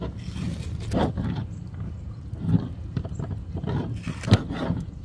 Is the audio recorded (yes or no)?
yes